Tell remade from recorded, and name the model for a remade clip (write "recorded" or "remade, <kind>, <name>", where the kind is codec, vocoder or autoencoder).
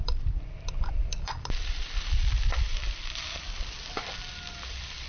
remade, vocoder, BigVGAN v2